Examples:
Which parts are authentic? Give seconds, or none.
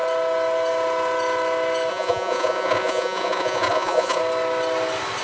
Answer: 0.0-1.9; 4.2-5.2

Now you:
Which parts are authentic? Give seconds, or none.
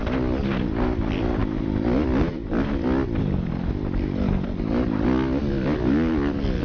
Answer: 0.0-6.6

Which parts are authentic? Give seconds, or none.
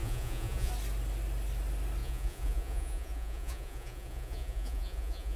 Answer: 0.7-2.0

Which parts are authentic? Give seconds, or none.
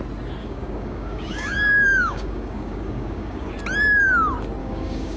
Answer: 0.0-0.4; 3.5-4.6